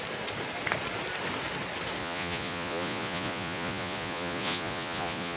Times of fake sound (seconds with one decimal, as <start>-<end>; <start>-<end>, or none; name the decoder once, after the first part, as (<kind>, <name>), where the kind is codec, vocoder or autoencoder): 2.0-5.4 (vocoder, Vocos)